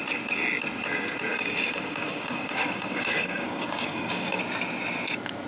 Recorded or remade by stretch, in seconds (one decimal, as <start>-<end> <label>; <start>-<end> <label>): 0.0-1.3 recorded; 1.3-4.4 remade; 4.4-5.5 recorded

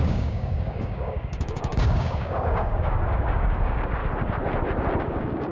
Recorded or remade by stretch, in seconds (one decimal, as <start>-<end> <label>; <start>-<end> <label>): 0.0-4.0 remade; 4.0-5.0 recorded; 5.0-5.5 remade

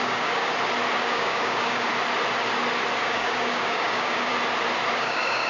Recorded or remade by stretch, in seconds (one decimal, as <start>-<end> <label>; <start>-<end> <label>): 0.0-0.5 remade; 0.5-1.0 recorded; 1.0-1.9 remade; 1.9-3.0 recorded; 3.0-4.3 remade; 4.3-4.9 recorded; 4.9-5.5 remade

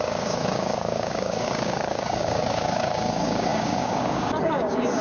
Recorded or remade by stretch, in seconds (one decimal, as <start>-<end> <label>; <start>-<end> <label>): 0.0-5.0 remade

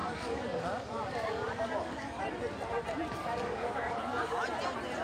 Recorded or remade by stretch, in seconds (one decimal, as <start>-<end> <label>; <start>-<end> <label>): 0.0-2.2 remade; 2.2-3.2 recorded; 3.2-4.4 remade; 4.4-5.0 recorded

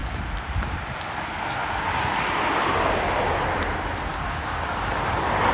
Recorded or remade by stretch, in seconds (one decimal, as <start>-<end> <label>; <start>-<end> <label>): 0.0-4.1 recorded; 4.1-4.8 remade; 4.8-5.5 recorded